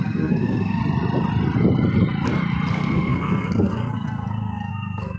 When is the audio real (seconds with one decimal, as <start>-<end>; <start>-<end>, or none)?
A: 0.8-2.7